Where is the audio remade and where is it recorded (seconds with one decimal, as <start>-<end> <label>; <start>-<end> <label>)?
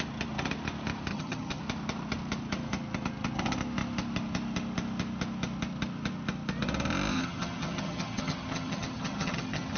0.0-1.1 recorded; 1.1-1.6 remade; 1.6-7.1 recorded; 7.1-9.8 remade